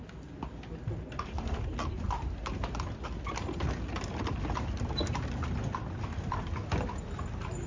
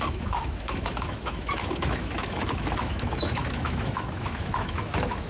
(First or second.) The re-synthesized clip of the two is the second